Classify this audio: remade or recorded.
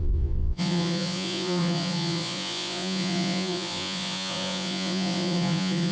remade